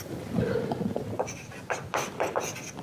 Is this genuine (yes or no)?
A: yes